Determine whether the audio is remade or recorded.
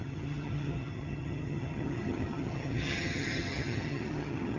remade